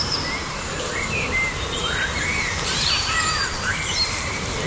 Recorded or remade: remade